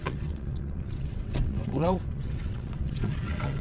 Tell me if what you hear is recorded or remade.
remade